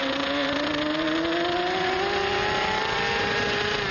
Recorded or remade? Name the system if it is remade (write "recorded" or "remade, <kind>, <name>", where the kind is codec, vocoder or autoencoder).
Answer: recorded